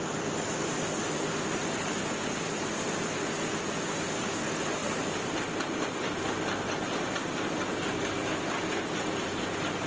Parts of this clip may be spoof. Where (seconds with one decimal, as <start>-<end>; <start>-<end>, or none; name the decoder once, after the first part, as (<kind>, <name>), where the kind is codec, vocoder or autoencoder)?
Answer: none